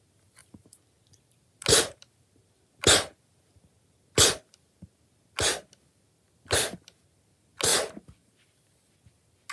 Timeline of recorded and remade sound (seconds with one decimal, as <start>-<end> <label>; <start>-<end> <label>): 0.0-9.5 recorded